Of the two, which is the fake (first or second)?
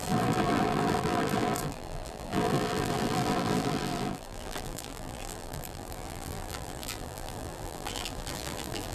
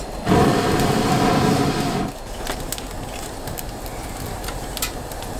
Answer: first